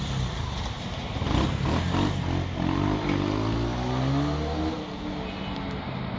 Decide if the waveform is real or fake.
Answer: real